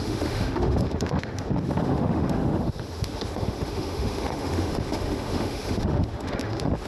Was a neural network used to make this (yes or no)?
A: yes